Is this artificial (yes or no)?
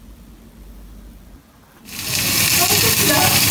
no